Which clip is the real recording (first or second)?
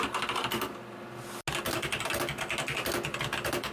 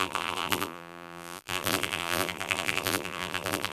first